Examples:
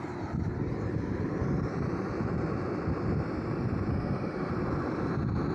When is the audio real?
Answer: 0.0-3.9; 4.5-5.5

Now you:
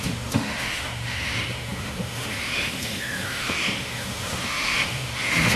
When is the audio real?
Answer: none

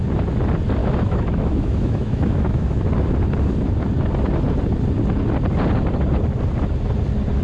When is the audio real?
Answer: 0.0-0.8; 2.9-7.4

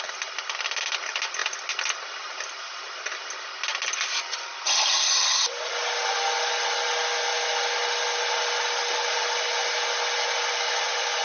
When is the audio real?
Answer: 0.0-11.2